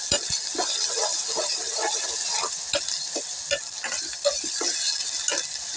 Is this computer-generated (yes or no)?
no